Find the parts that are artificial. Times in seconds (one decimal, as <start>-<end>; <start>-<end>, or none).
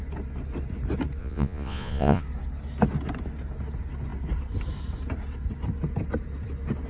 1.2-2.2